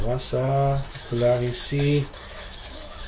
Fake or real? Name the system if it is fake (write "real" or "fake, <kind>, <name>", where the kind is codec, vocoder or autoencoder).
fake, autoencoder, DAC-VAE